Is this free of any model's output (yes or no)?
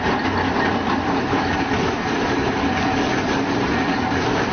yes